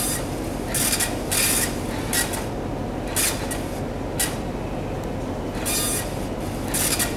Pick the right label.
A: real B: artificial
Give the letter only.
A